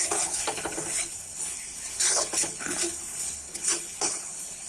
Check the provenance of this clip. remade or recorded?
remade